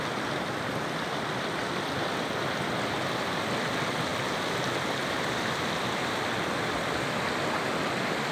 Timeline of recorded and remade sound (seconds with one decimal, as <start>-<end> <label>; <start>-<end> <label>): 0.0-8.3 recorded